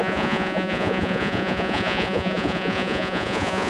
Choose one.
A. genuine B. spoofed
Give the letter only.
B